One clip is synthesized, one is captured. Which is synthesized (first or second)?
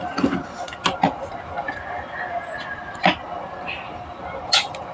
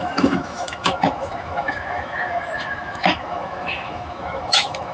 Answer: second